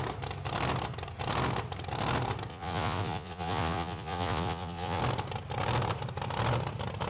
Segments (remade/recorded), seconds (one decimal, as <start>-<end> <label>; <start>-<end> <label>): 0.0-2.5 recorded; 2.5-5.0 remade; 5.0-7.1 recorded